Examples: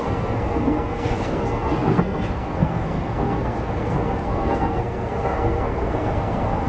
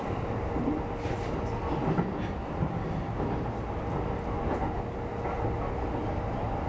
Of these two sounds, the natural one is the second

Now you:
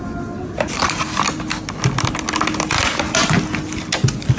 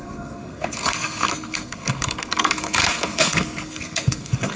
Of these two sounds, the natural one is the first